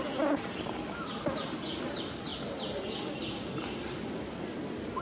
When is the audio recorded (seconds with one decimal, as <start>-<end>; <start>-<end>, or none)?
0.0-5.0

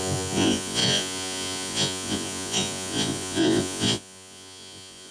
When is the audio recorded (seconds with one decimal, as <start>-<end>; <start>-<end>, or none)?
none

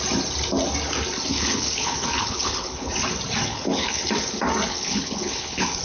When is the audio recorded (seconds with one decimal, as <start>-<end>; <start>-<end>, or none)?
0.0-1.3; 2.9-3.5; 4.0-4.7

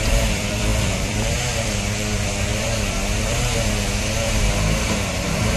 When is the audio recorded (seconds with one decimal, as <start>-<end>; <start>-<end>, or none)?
none

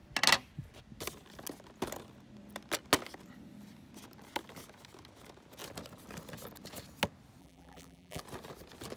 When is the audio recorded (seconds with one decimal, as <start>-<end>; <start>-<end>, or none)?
0.0-7.4; 8.2-9.0

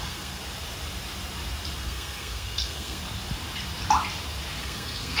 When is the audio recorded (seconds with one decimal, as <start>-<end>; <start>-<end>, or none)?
0.4-1.8; 3.0-4.6

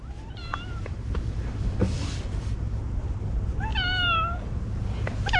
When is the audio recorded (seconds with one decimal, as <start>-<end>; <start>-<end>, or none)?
0.0-0.4; 2.8-3.7; 4.6-5.4